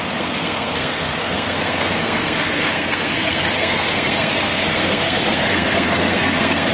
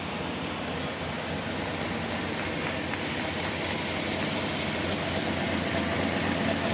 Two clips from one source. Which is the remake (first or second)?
first